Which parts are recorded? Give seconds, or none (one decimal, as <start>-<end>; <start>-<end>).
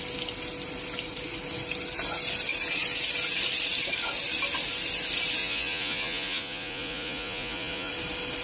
0.0-5.4; 7.9-8.4